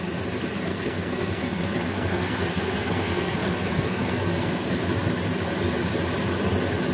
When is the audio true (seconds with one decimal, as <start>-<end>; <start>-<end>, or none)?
0.0-0.7; 4.8-6.9